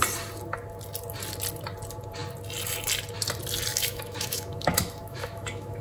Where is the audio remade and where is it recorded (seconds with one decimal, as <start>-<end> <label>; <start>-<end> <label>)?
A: 0.0-3.7 recorded; 3.7-5.8 remade